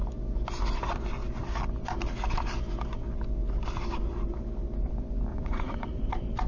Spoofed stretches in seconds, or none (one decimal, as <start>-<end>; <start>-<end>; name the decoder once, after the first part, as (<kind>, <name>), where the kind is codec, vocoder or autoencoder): 5.3-6.0 (vocoder, Vocos)